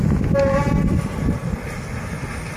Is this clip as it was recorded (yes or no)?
yes